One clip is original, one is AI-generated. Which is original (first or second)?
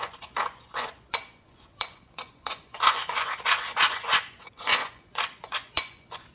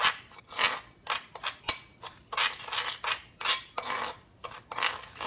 second